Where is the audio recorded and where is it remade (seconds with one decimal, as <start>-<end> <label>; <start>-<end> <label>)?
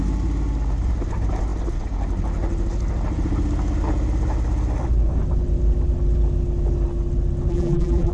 0.0-7.5 recorded; 7.5-8.1 remade